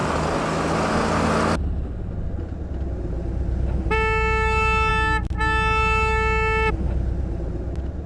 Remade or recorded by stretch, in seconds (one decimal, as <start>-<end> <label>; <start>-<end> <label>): 0.0-8.1 recorded

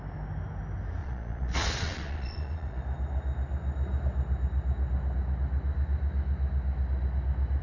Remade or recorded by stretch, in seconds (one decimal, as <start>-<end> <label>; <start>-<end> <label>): 0.0-1.0 recorded; 1.0-2.8 remade; 2.8-7.6 recorded

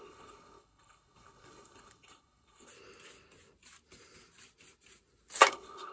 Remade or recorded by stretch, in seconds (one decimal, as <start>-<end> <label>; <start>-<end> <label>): 0.0-2.7 remade; 2.7-5.5 recorded; 5.5-5.9 remade

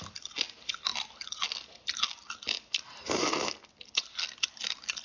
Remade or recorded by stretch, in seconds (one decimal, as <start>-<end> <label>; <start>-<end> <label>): 0.0-5.0 recorded

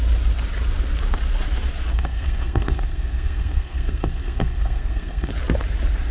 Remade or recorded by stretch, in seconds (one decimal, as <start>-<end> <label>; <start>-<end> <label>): 0.0-1.9 recorded; 1.9-5.3 remade; 5.3-6.1 recorded

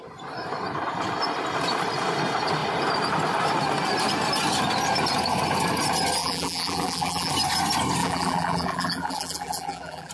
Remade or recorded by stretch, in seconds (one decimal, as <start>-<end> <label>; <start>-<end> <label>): 0.0-6.2 recorded; 6.2-7.3 remade; 7.3-8.0 recorded; 8.0-10.1 remade

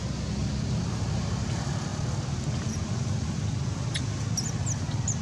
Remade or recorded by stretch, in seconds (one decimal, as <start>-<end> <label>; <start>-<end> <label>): 0.0-5.2 recorded

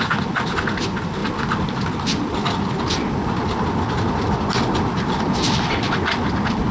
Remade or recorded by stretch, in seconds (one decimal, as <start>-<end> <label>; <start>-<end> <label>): 0.0-6.7 recorded